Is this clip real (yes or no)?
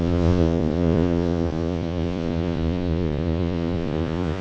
no